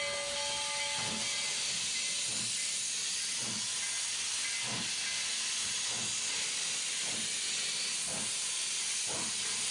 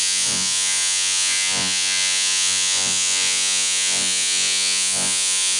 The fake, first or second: second